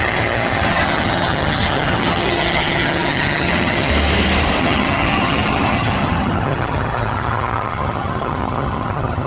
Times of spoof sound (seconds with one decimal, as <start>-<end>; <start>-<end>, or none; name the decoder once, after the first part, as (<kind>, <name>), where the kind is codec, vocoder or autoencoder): 0.0-3.9 (vocoder, HiFi-GAN); 4.6-9.3